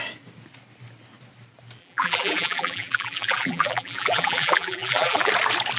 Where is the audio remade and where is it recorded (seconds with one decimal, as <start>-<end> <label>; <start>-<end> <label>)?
0.0-1.8 recorded; 1.8-5.3 remade; 5.3-5.8 recorded